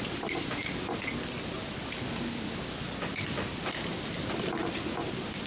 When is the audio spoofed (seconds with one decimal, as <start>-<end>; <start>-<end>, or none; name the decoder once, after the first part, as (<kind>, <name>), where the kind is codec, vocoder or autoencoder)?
0.0-0.6 (vocoder, BigVGAN v2); 3.9-5.5